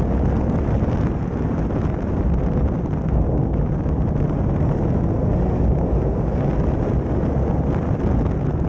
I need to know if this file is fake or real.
real